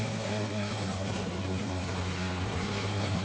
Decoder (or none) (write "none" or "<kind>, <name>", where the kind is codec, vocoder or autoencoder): codec, SNAC